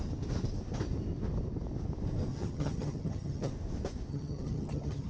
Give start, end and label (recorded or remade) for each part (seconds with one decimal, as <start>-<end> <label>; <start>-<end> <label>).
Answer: 0.0-2.3 recorded; 2.3-3.5 remade; 3.5-4.1 recorded; 4.1-5.1 remade